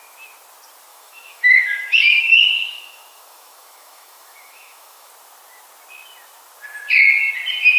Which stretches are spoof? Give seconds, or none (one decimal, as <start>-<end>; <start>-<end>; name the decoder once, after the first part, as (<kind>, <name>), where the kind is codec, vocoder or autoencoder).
0.9-5.1 (autoencoder, DAC-VAE)